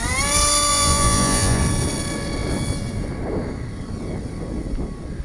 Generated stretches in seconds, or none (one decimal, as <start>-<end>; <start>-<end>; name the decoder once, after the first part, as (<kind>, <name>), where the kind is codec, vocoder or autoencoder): 0.7-1.6 (vocoder, Vocos)